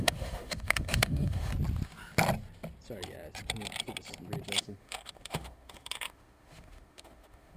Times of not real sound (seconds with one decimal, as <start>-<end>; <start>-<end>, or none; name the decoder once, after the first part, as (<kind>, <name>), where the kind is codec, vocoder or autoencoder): 0.0-1.5 (autoencoder, DAC-VAE); 4.6-7.6